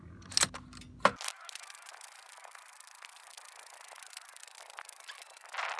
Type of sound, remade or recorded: recorded